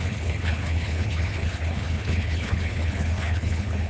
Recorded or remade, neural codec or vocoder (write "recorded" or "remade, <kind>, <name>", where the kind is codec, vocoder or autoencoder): remade, codec, HILCodec